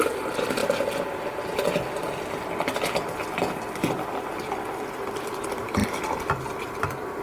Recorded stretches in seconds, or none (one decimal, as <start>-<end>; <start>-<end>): 0.6-4.9; 5.8-6.6